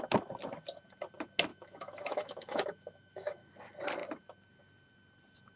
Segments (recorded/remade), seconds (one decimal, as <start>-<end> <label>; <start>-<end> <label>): 0.0-1.5 recorded; 1.5-3.5 remade; 3.5-5.6 recorded